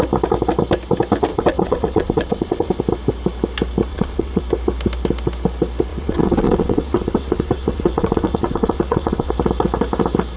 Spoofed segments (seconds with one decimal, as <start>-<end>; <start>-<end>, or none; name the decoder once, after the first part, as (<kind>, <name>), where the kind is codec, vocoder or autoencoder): 1.3-2.8 (vocoder, WaveNeXt); 3.9-4.4; 5.9-9.3